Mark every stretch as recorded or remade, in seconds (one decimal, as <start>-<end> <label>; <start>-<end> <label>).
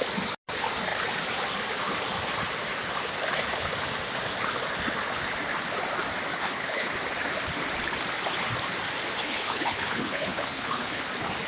0.0-6.3 recorded; 6.3-6.9 remade; 6.9-9.2 recorded; 9.2-11.0 remade; 11.0-11.5 recorded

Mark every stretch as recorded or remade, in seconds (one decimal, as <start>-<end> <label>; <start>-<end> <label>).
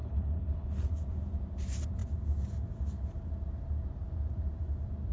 0.0-0.8 remade; 0.8-5.1 recorded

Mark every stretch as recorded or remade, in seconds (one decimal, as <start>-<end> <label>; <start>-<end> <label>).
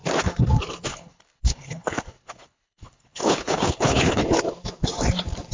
0.0-0.9 recorded; 0.9-4.2 remade; 4.2-5.5 recorded